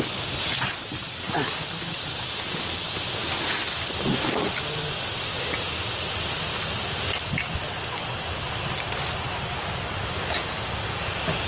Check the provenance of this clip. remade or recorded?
recorded